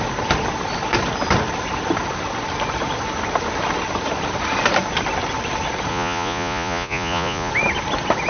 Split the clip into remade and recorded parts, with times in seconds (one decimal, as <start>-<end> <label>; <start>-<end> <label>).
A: 0.0-5.9 recorded; 5.9-7.5 remade; 7.5-8.3 recorded